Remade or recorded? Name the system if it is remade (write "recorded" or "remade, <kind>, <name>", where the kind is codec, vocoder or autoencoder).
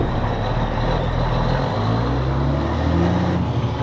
recorded